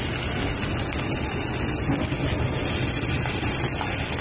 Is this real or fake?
real